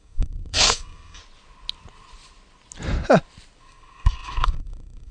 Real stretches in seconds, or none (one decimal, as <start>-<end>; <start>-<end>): 1.2-3.6